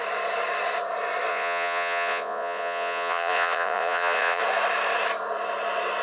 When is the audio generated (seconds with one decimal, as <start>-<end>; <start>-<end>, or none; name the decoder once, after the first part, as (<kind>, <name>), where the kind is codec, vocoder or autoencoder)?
1.3-4.4 (vocoder, Vocos)